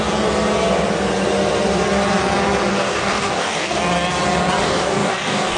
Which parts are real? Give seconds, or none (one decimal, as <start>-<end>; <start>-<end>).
0.0-2.7; 3.8-4.6